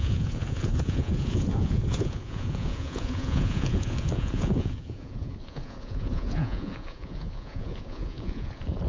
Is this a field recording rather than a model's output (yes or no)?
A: no